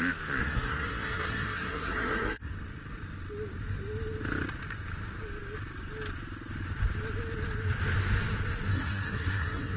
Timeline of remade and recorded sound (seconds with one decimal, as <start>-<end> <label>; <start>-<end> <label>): 0.0-0.4 recorded; 0.4-2.5 remade; 2.5-8.7 recorded; 8.7-9.8 remade